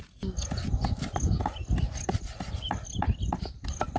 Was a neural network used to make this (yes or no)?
no